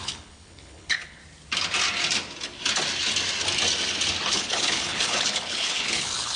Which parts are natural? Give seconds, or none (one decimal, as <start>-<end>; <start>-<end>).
1.2-4.3

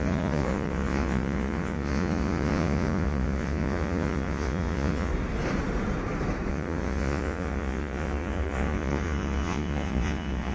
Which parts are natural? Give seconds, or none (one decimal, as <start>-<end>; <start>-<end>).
5.1-6.5